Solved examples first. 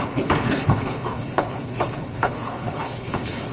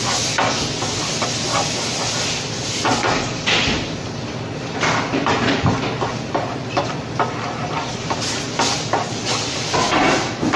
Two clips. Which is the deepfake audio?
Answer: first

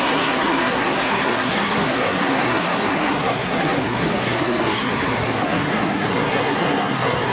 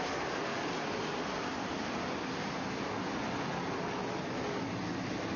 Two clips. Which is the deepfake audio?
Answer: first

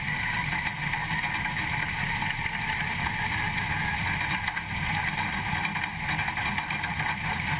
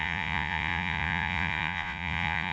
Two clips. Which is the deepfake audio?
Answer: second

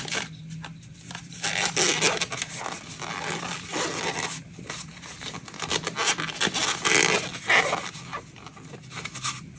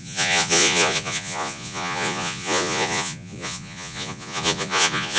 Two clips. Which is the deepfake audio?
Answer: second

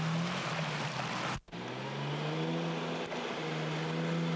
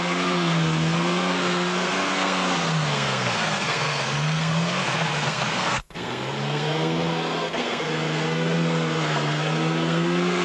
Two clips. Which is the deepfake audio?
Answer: second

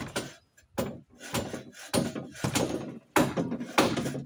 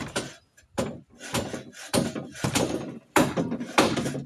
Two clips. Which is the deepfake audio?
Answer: second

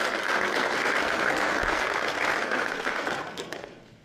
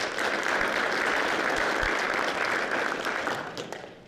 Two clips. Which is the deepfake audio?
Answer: first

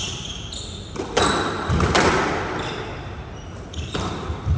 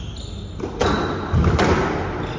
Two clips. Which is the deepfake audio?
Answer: first